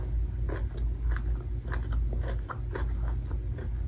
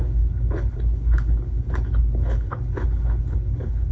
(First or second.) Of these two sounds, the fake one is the second